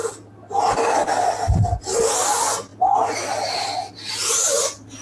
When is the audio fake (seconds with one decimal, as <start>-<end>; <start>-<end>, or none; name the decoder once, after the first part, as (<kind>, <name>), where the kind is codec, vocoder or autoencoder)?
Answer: none

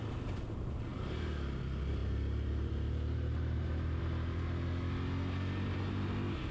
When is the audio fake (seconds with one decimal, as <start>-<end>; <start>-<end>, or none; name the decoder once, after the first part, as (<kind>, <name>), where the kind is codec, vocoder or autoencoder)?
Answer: none

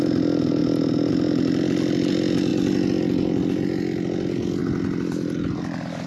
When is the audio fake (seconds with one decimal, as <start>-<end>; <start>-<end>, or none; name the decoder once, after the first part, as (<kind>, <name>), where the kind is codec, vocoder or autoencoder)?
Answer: none

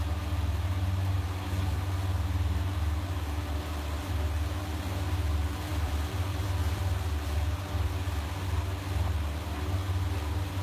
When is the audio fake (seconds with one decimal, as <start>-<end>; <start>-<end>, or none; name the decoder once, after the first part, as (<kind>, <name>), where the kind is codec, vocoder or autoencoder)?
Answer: 5.7-6.8 (vocoder, BigVGAN v2)

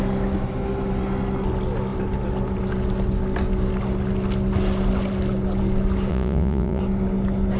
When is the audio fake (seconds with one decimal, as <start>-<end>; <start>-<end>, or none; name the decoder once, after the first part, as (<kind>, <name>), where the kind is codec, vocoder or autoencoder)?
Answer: 6.1-6.8 (vocoder, Vocos)

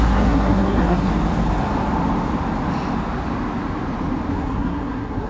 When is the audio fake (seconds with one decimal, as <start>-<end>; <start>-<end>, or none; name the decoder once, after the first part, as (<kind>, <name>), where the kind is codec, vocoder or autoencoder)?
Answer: 0.0-1.1 (codec, SNAC); 4.3-5.3

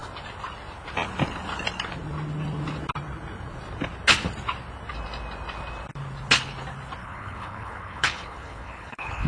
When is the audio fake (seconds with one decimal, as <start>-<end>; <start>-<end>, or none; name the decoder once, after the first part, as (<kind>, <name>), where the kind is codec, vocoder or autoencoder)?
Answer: 7.0-9.3 (codec, HILCodec)